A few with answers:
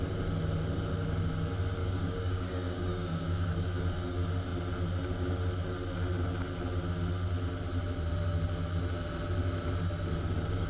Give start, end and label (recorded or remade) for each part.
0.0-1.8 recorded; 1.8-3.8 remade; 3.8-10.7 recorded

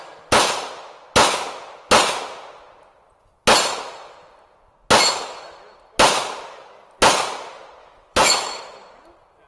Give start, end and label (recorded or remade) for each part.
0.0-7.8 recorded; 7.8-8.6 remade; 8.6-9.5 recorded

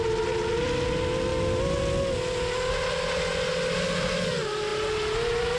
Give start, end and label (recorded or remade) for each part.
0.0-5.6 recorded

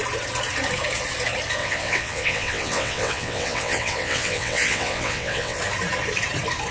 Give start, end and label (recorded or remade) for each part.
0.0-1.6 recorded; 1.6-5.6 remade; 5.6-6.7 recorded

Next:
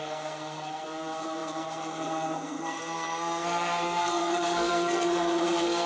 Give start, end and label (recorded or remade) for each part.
0.0-5.9 remade

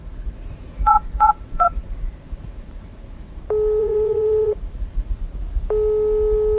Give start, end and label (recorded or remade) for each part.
0.0-3.4 remade; 3.4-3.8 recorded; 3.8-5.2 remade; 5.2-6.6 recorded

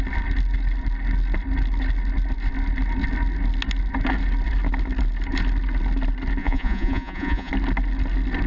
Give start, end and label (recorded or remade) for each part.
0.0-6.4 recorded; 6.4-7.5 remade; 7.5-8.5 recorded

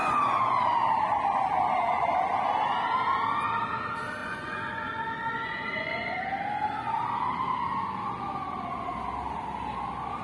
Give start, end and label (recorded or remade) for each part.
0.0-0.6 remade; 0.6-4.2 recorded; 4.2-6.2 remade; 6.2-10.2 recorded